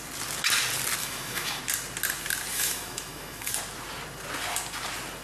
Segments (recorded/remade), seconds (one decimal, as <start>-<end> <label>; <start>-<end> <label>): 0.0-1.0 recorded; 1.0-1.6 remade; 1.6-2.5 recorded; 2.5-3.6 remade; 3.6-5.2 recorded